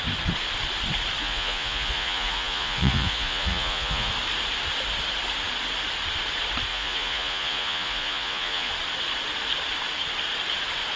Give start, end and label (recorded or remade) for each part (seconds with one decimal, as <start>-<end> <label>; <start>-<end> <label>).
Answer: 0.0-1.2 recorded; 1.2-4.1 remade; 4.1-6.7 recorded; 6.7-8.7 remade; 8.7-11.0 recorded